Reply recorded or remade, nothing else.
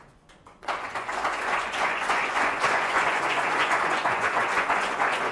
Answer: remade